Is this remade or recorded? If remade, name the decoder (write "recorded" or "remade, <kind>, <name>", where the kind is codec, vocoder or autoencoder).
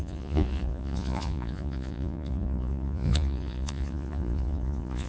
remade, vocoder, Vocos